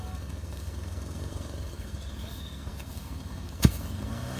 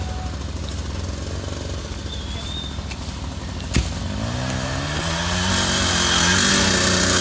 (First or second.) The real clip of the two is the second